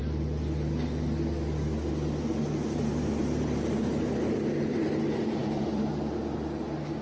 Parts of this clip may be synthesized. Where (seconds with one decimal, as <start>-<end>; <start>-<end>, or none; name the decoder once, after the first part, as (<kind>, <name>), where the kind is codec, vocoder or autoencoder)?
5.4-5.9 (vocoder, BigVGAN v2)